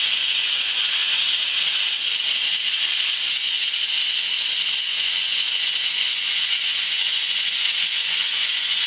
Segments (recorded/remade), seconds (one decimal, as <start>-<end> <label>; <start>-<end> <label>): 0.0-1.0 remade; 1.0-4.9 recorded; 4.9-8.9 remade